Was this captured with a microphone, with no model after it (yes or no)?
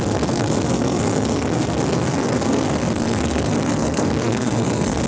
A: no